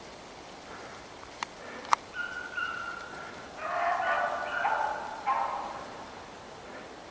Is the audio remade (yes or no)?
no